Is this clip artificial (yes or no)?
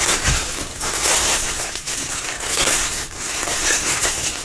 yes